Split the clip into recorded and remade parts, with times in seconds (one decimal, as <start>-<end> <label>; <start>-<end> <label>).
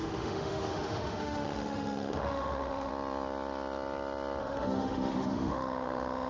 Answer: 0.0-2.9 remade; 2.9-4.4 recorded; 4.4-6.3 remade